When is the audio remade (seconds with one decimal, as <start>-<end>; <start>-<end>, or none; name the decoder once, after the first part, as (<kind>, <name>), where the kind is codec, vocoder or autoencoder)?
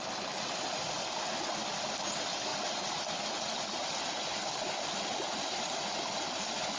none